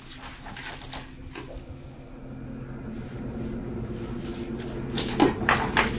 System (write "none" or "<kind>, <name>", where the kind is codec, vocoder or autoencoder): none